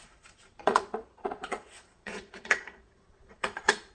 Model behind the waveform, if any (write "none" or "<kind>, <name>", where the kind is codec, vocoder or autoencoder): vocoder, Vocos